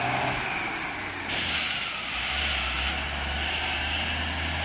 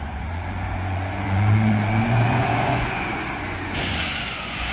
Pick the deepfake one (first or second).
second